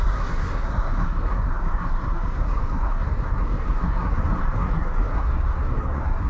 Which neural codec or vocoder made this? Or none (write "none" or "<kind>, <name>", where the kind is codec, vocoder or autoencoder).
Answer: codec, SNAC